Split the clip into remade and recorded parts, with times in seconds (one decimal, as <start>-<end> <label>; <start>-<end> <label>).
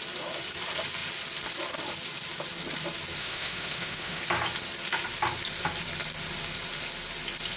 0.0-3.2 recorded; 3.2-4.2 remade; 4.2-7.6 recorded